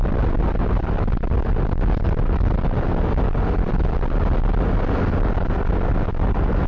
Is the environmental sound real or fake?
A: real